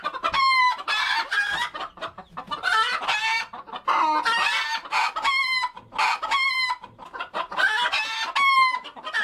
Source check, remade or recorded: recorded